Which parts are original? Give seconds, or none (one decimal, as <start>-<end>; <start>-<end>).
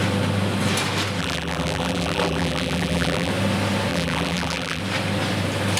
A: 0.0-1.2; 3.3-3.9; 4.8-5.8